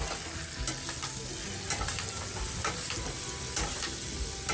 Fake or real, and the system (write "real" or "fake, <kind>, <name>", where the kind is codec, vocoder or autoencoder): real